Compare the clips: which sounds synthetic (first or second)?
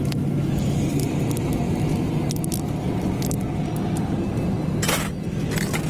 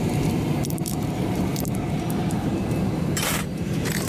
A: second